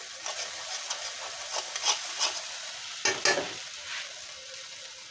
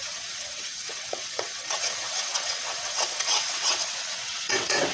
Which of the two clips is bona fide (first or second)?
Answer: first